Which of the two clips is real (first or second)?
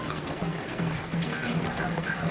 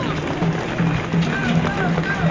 second